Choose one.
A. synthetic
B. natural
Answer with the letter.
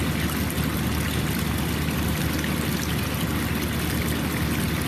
B